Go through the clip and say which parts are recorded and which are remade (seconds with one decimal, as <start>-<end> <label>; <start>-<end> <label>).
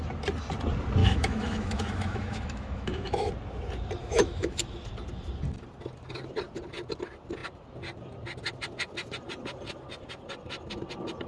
0.0-1.0 recorded; 1.0-3.3 remade; 3.3-4.0 recorded; 4.0-4.6 remade; 4.6-11.3 recorded